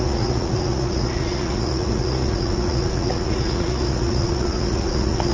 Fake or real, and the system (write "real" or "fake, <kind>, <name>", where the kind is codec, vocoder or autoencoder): fake, vocoder, Vocos